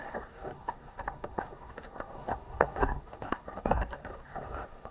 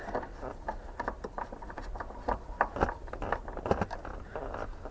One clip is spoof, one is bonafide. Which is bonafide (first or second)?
second